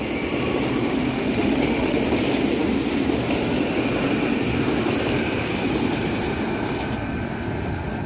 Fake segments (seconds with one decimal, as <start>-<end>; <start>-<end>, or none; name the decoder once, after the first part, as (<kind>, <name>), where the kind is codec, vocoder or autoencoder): 1.1-2.0 (autoencoder, DAC-VAE)